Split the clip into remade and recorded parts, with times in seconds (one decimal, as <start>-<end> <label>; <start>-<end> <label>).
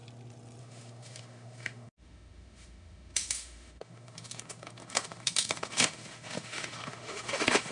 0.0-0.6 recorded; 0.6-7.7 remade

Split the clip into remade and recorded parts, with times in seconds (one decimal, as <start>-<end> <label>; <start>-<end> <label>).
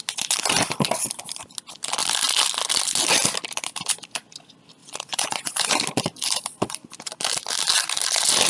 0.0-4.8 recorded; 4.8-5.8 remade; 5.8-8.5 recorded